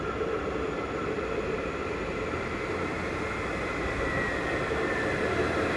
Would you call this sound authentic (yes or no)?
yes